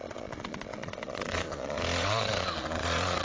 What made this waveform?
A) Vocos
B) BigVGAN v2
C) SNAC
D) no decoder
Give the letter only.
A